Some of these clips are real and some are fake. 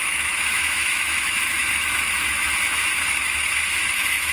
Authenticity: fake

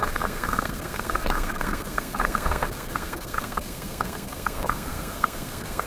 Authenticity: fake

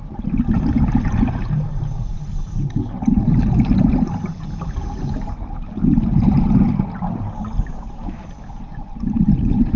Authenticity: real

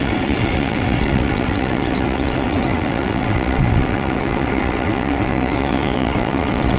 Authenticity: fake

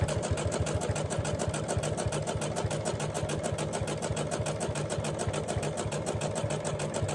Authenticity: real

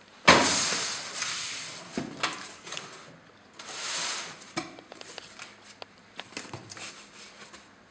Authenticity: real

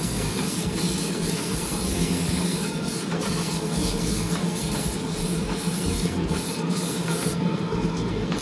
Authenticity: fake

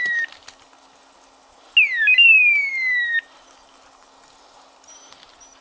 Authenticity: real